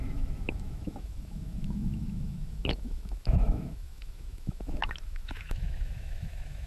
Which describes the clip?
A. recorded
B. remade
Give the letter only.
B